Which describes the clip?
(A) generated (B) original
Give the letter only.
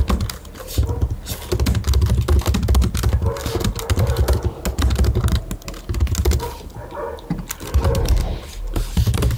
B